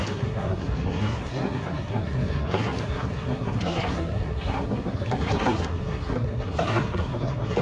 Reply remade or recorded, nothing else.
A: remade